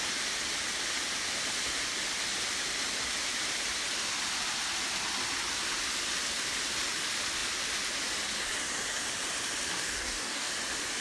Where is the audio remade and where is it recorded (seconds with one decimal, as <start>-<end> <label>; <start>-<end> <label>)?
0.0-9.7 recorded; 9.7-10.5 remade; 10.5-11.0 recorded